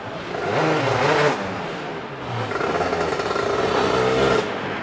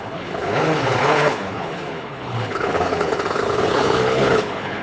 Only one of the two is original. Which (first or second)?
first